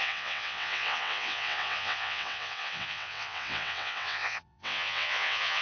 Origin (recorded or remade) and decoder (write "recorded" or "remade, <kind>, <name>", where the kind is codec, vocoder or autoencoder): remade, vocoder, WaveNeXt